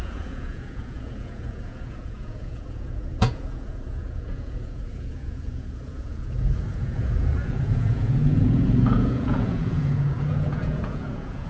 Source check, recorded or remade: remade